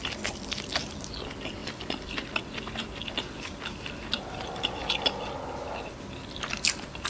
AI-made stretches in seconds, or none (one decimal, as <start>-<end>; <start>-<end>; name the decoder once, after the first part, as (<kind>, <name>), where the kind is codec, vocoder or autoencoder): none